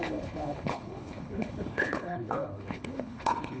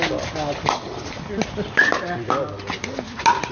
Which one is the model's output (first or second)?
first